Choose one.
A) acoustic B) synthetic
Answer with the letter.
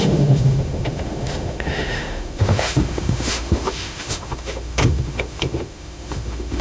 B